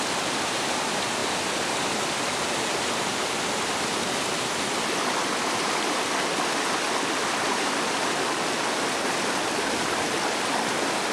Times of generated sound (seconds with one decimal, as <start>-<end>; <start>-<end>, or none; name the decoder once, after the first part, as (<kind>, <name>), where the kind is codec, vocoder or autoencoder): none